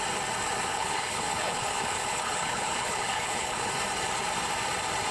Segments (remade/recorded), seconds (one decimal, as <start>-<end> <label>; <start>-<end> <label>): 0.0-0.7 recorded; 0.7-3.7 remade; 3.7-5.1 recorded